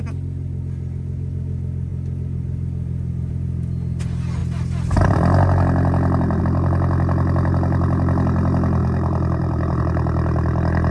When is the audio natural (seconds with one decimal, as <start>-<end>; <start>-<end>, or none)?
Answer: 0.0-8.8; 9.8-10.9

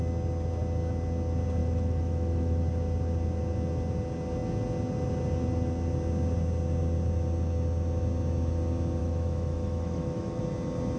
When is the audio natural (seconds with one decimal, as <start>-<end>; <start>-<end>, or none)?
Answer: 0.0-1.6; 2.6-9.0; 10.4-11.0

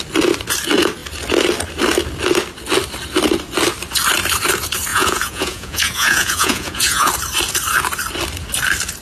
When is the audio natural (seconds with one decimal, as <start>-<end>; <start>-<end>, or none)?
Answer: 0.0-4.9; 7.1-9.0

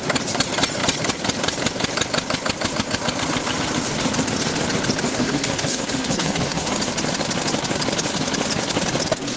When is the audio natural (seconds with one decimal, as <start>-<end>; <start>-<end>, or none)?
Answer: 0.0-5.1; 6.7-9.4

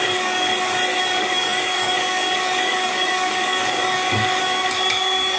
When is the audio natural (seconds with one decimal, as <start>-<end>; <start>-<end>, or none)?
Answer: 0.5-1.0

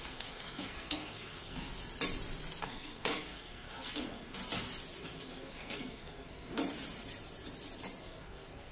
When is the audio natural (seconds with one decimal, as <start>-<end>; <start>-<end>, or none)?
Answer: 1.7-2.6; 4.4-5.0; 6.6-8.0

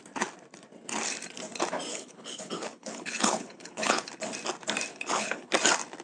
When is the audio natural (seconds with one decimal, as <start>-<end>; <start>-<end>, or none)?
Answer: 0.0-1.9; 4.1-4.9; 5.5-6.0

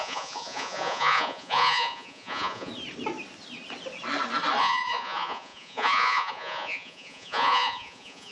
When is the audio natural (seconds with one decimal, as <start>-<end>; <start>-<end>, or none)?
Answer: 2.7-4.6